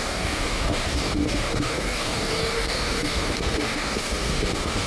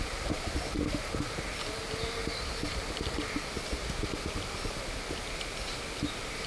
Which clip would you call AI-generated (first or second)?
first